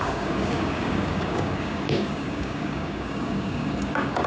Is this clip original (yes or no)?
no